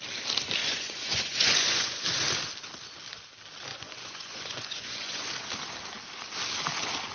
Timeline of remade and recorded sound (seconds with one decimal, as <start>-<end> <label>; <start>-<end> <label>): 0.0-0.6 recorded; 0.6-2.0 remade; 2.0-3.7 recorded; 3.7-5.3 remade; 5.3-7.1 recorded